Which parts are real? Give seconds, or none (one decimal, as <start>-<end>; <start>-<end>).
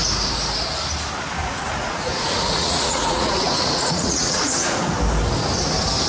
0.0-1.4; 4.8-6.1